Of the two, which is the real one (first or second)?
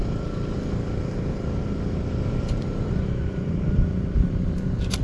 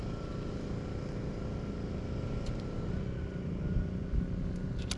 second